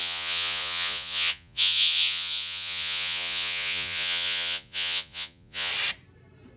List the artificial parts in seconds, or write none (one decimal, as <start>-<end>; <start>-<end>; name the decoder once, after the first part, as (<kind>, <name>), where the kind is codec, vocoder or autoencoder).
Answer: 0.0-5.7 (vocoder, Vocos)